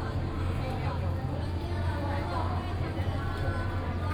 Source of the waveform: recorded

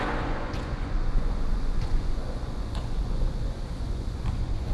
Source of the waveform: remade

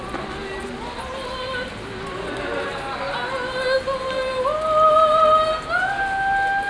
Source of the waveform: recorded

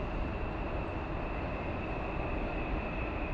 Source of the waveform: recorded